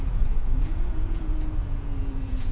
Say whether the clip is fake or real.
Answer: fake